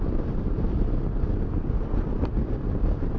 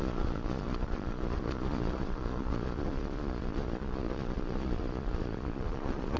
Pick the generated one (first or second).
second